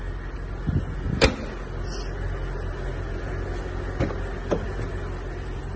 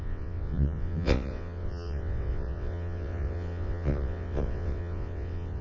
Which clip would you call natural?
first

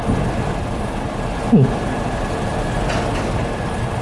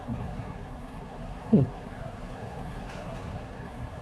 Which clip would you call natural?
first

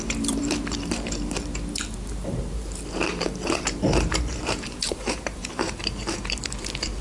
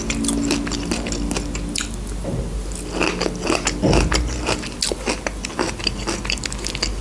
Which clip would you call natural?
second